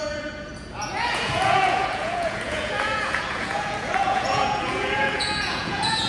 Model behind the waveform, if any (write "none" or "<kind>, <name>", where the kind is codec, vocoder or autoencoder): vocoder, Vocos